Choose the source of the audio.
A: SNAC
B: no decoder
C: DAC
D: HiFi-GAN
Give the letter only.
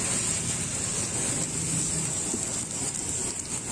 B